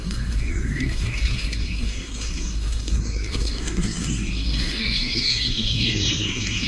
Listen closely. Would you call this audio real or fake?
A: fake